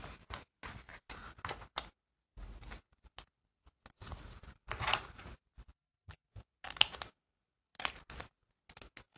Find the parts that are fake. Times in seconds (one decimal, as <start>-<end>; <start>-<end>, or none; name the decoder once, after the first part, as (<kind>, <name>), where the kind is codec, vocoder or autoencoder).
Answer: 5.7-6.3 (vocoder, BigVGAN v2)